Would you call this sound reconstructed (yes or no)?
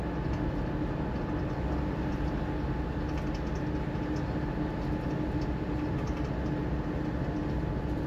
no